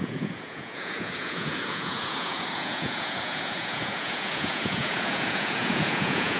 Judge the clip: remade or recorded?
remade